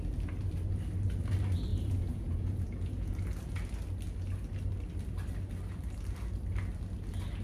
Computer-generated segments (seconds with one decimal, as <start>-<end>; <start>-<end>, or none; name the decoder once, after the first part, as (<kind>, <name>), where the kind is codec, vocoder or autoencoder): 1.7-3.1 (vocoder, Vocos)